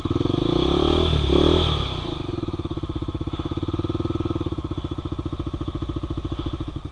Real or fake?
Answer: real